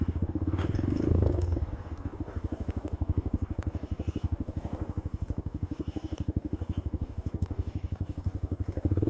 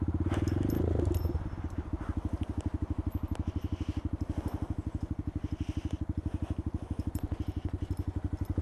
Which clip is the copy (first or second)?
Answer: first